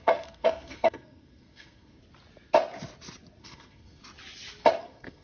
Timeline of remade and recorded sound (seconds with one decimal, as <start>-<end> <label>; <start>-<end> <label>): 0.0-2.0 remade; 2.0-3.4 recorded; 3.4-4.0 remade; 4.0-4.8 recorded; 4.8-5.2 remade